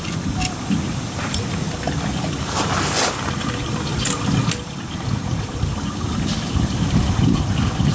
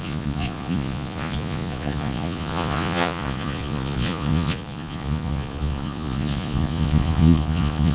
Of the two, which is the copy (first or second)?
second